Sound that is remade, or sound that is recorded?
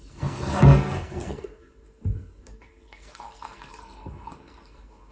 remade